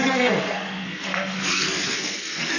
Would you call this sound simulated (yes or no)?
yes